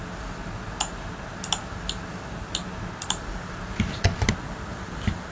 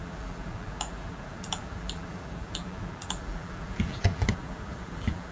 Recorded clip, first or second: first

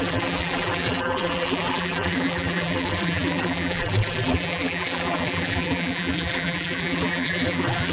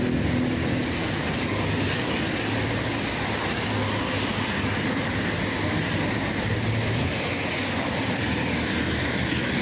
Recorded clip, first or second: second